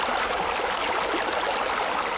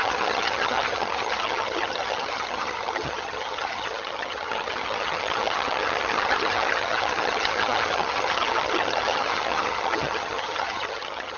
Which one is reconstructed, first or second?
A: second